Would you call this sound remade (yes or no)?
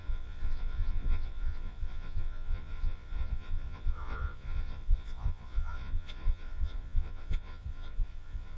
yes